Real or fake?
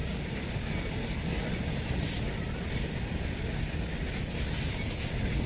real